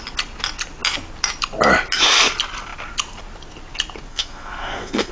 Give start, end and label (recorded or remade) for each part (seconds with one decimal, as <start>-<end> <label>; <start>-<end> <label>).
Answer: 0.0-4.1 recorded; 4.1-5.1 remade